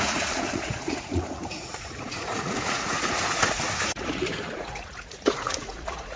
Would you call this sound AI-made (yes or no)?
yes